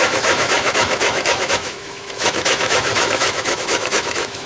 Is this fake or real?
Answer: fake